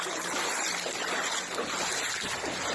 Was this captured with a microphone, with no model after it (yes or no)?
yes